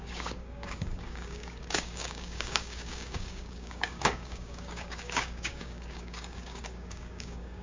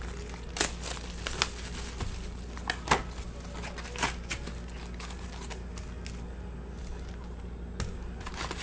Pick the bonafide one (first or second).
second